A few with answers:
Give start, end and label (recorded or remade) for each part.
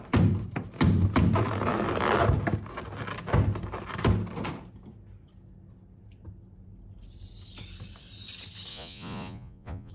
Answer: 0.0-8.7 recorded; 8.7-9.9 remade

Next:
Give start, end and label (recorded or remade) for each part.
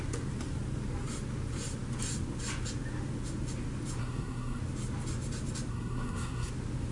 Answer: 0.0-4.0 recorded; 4.0-4.6 remade; 4.6-5.7 recorded; 5.7-6.5 remade; 6.5-6.9 recorded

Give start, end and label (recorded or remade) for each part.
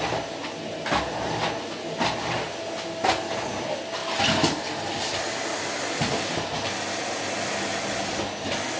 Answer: 0.0-8.8 recorded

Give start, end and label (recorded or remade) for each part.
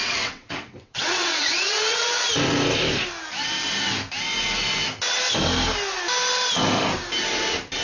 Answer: 0.0-2.2 remade; 2.2-7.8 recorded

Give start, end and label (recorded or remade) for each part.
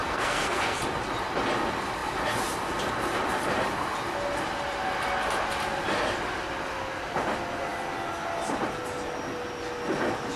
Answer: 0.0-0.8 remade; 0.8-10.4 recorded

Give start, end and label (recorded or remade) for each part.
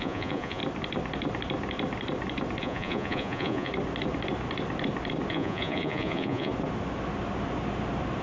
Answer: 0.0-0.6 remade; 0.6-2.6 recorded; 2.6-3.7 remade; 3.7-5.3 recorded; 5.3-6.5 remade; 6.5-8.2 recorded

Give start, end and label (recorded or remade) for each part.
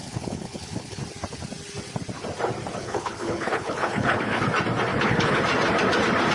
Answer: 0.0-1.0 remade; 1.0-2.8 recorded; 2.8-4.4 remade; 4.4-4.9 recorded; 4.9-5.4 remade; 5.4-6.3 recorded